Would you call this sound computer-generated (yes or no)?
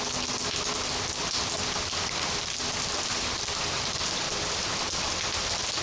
no